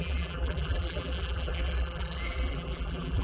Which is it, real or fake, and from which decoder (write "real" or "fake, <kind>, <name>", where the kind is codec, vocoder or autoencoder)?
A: fake, vocoder, BigVGAN v2